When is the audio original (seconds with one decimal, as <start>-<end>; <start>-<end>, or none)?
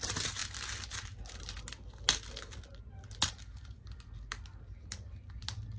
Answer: 0.0-5.8